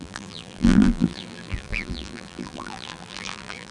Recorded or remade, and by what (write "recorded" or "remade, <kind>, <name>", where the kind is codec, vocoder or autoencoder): remade, vocoder, BigVGAN v2